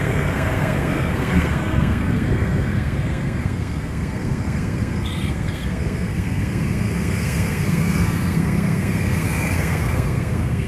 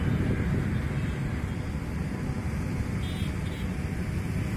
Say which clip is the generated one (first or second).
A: first